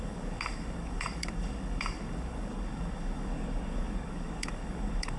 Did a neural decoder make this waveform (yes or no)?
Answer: yes